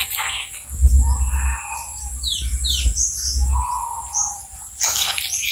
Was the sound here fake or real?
real